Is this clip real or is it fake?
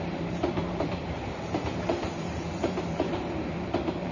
fake